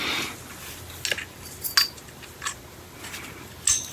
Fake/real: real